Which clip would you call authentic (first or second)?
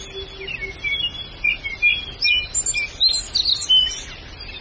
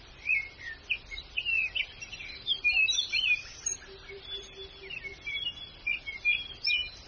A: first